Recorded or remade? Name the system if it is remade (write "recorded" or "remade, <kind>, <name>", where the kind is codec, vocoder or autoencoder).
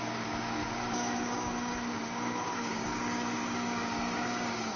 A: remade, codec, DAC